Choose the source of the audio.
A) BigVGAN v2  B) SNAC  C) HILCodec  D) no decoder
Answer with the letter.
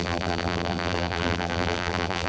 A